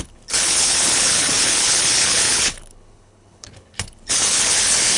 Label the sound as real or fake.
fake